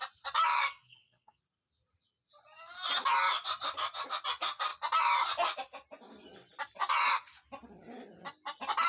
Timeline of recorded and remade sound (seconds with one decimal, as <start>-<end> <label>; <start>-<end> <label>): 0.0-0.5 recorded; 0.5-1.4 remade; 1.4-8.9 recorded